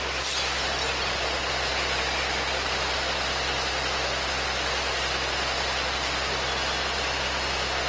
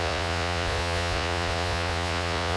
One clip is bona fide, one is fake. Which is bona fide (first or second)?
first